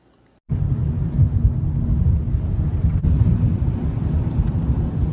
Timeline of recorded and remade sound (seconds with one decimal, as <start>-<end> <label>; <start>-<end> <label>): 0.0-5.1 recorded